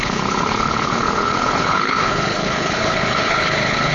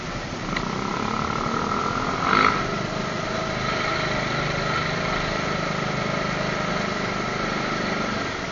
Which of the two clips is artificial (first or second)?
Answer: first